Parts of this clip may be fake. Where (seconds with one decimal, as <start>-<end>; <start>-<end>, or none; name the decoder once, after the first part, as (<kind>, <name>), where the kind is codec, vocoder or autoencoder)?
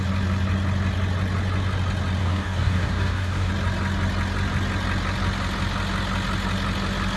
2.2-3.5 (codec, DAC)